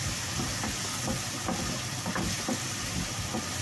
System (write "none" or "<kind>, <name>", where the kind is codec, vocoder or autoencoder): none